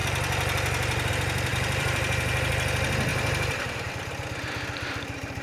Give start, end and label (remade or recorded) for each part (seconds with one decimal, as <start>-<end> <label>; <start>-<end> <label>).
0.0-1.5 recorded; 1.5-2.5 remade; 2.5-3.1 recorded; 3.1-3.9 remade; 3.9-5.4 recorded